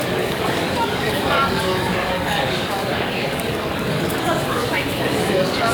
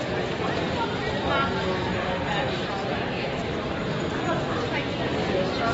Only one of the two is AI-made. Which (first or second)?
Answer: first